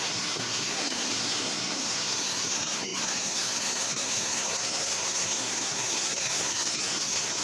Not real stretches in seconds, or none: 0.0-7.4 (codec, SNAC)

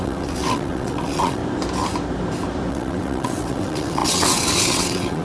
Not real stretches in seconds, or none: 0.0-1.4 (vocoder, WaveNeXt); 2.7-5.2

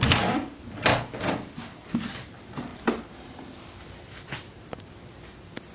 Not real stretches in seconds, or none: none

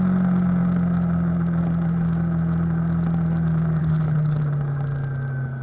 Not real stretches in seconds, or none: 3.8-4.4 (codec, HILCodec)

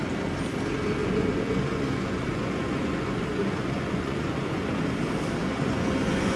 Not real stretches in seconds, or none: 1.0-4.8 (vocoder, Vocos); 5.4-6.4